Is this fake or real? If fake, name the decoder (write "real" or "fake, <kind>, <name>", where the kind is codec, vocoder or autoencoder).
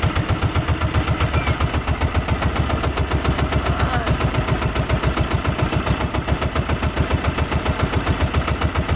real